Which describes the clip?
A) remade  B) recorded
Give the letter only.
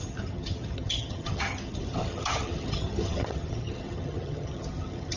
A